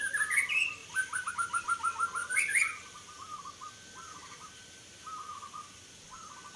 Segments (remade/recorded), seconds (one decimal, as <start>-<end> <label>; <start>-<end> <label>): 0.0-0.8 recorded; 0.8-1.3 remade; 1.3-2.2 recorded; 2.2-3.4 remade; 3.4-4.2 recorded; 4.2-5.8 remade; 5.8-6.6 recorded

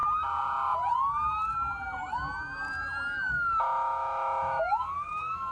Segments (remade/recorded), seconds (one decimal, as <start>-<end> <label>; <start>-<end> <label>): 0.0-3.3 recorded; 3.3-5.5 remade

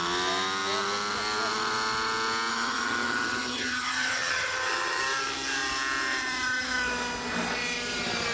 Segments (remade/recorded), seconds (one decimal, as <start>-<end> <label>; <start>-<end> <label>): 0.0-2.5 recorded; 2.5-5.0 remade; 5.0-8.3 recorded

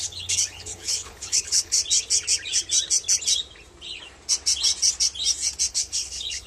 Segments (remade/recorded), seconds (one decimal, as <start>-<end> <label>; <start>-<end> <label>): 0.0-1.8 remade; 1.8-5.7 recorded; 5.7-6.5 remade

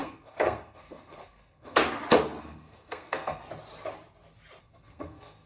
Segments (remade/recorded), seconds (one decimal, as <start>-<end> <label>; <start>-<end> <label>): 0.0-1.8 remade; 1.8-2.4 recorded; 2.4-3.4 remade; 3.4-4.6 recorded; 4.6-5.5 remade

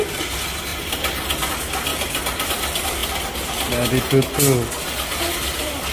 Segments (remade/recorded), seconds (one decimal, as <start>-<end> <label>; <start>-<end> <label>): 0.0-3.0 remade; 3.0-5.2 recorded; 5.2-5.9 remade

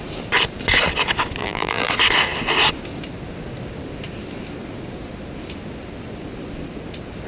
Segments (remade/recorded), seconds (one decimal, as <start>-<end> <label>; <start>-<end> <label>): 0.0-1.4 recorded; 1.4-1.9 remade; 1.9-7.3 recorded

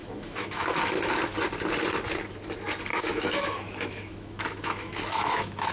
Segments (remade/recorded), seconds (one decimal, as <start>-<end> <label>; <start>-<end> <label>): 0.0-0.8 remade; 0.8-2.9 recorded; 2.9-5.7 remade